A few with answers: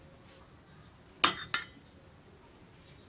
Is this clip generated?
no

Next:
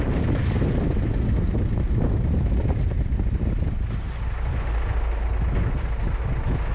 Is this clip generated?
no